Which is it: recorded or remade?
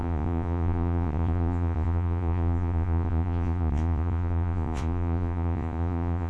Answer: remade